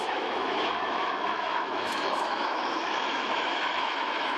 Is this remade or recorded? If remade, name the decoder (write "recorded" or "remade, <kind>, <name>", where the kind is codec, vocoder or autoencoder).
remade, autoencoder, DAC-VAE